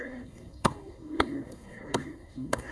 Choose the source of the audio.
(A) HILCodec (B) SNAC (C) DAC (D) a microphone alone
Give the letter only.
B